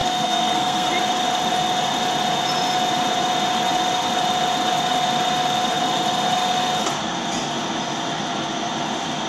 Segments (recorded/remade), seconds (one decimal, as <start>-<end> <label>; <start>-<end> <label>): 0.0-0.9 remade; 0.9-9.3 recorded